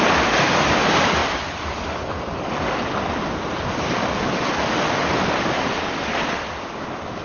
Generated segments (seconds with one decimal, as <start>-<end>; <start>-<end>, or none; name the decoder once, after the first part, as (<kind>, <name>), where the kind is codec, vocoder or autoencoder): none